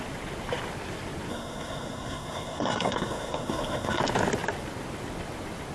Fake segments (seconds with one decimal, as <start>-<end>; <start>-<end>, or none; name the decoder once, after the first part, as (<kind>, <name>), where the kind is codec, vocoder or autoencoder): 1.3-4.0 (codec, SNAC)